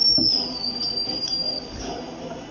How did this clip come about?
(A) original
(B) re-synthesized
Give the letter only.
A